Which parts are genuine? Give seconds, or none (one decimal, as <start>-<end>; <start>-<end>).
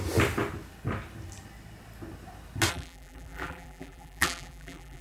0.0-2.7